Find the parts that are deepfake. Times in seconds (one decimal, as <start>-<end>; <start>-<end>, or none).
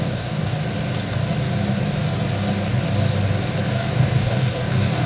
0.0-0.6; 3.7-5.1